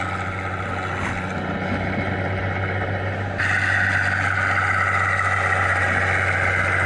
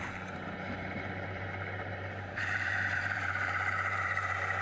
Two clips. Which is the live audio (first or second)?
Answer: first